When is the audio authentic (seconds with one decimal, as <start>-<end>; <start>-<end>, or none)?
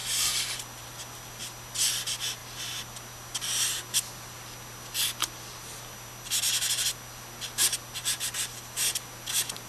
0.0-9.7